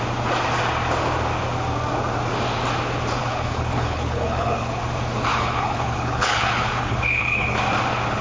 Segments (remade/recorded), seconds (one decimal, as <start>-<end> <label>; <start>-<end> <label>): 0.0-3.2 recorded; 3.2-4.8 remade; 4.8-5.3 recorded; 5.3-7.6 remade; 7.6-8.2 recorded